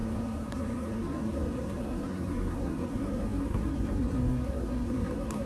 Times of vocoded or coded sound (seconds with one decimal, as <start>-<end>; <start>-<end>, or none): 0.0-5.5